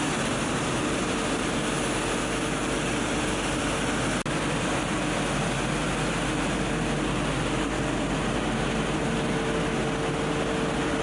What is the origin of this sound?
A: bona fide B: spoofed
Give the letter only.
A